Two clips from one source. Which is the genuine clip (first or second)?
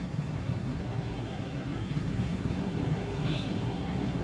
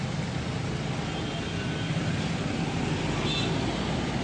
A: second